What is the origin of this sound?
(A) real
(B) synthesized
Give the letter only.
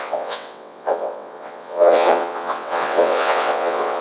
B